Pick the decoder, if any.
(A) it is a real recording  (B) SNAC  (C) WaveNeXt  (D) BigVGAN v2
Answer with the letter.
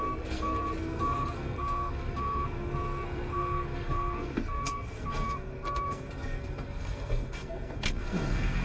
B